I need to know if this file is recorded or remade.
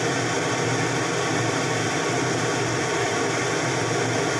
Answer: recorded